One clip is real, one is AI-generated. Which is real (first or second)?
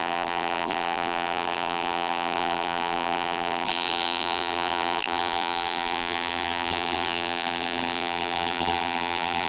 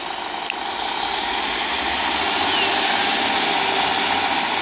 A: second